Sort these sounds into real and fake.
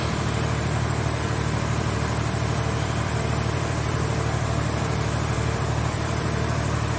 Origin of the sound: fake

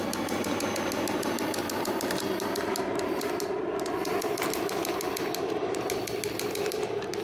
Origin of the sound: fake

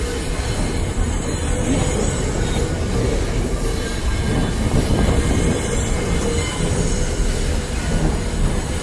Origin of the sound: real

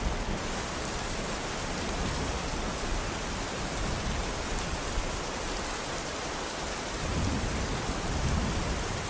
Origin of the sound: fake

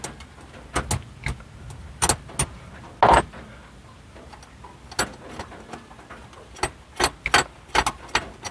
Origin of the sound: real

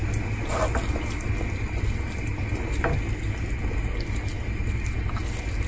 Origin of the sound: real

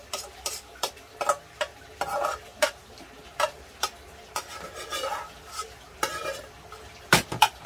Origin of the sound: fake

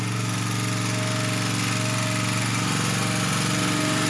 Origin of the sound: real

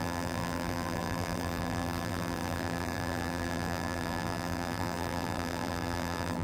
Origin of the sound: fake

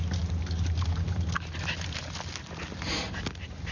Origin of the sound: real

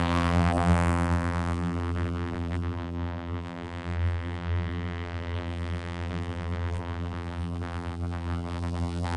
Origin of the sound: fake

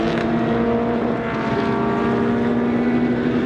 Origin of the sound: real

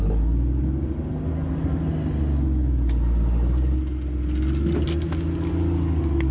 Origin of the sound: real